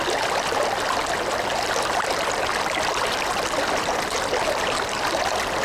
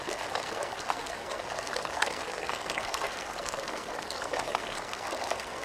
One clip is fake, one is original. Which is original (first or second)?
first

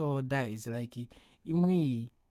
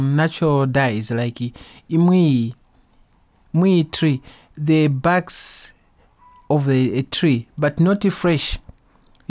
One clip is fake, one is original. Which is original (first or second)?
second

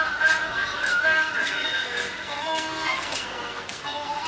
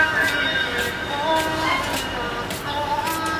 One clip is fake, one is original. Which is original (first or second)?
second